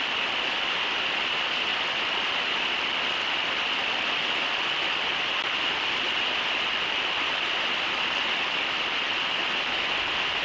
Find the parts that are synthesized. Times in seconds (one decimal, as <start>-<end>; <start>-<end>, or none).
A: none